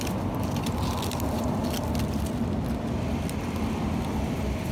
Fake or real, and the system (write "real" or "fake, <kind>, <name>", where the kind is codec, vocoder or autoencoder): real